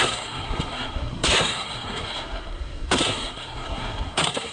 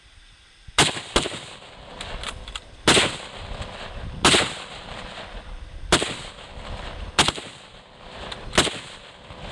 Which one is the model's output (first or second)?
first